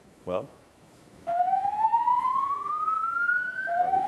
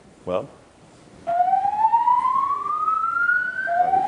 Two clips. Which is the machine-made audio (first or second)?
first